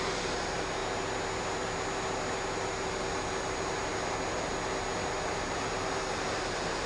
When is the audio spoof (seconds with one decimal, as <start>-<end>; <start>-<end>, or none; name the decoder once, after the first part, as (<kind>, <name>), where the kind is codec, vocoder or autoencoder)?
none